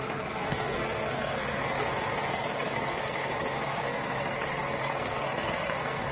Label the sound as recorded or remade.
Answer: remade